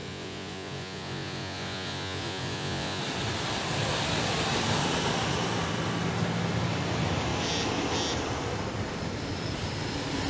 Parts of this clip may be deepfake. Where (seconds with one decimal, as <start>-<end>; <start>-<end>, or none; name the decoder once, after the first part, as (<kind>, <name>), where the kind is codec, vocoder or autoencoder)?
0.0-3.0 (vocoder, Vocos)